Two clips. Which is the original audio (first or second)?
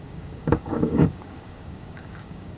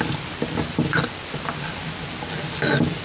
second